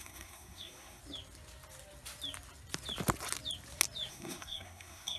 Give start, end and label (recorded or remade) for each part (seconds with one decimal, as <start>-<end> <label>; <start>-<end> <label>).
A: 0.0-1.0 remade; 1.0-4.1 recorded; 4.1-5.2 remade

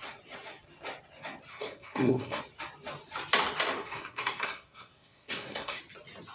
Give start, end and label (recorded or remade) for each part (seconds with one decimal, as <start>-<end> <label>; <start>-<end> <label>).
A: 0.0-1.5 recorded; 1.5-2.4 remade; 2.4-3.8 recorded; 3.8-5.8 remade; 5.8-6.3 recorded

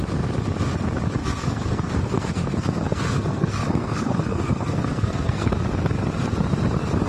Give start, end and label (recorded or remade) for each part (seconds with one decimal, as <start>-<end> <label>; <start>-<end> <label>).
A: 0.0-1.2 recorded; 1.2-5.5 remade; 5.5-7.1 recorded

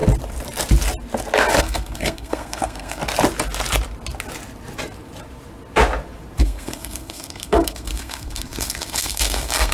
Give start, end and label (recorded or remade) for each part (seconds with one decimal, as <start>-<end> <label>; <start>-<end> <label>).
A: 0.0-1.6 recorded; 1.6-3.0 remade; 3.0-6.4 recorded; 6.4-9.7 remade

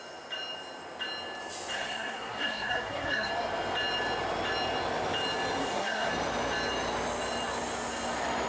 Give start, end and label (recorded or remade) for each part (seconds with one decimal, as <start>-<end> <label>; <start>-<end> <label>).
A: 0.0-1.7 recorded; 1.7-3.3 remade; 3.3-5.6 recorded; 5.6-6.1 remade; 6.1-8.5 recorded

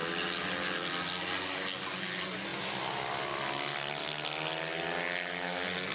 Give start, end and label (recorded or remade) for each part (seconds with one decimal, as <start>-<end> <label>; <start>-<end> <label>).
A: 0.0-5.9 recorded

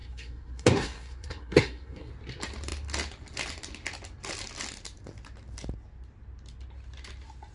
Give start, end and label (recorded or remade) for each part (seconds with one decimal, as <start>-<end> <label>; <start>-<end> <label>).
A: 0.0-2.1 remade; 2.1-7.5 recorded